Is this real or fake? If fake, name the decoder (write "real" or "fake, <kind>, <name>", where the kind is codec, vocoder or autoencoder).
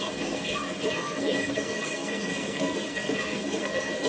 fake, codec, SNAC